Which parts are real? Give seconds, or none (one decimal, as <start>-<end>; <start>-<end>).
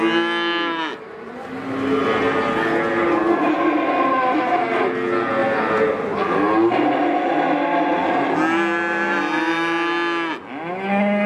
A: 0.0-11.3